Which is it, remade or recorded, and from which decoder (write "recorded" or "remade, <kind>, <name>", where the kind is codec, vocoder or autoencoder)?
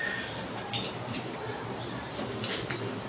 recorded